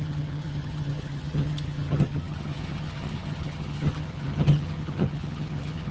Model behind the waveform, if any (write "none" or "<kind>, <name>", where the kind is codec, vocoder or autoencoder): vocoder, HiFi-GAN